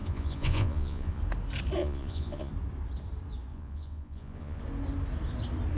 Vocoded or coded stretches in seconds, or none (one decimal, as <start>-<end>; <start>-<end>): 0.0-1.2; 1.8-2.5; 3.5-4.6